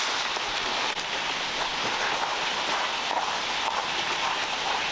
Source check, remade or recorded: recorded